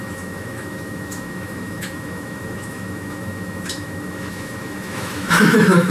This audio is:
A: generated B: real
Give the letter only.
A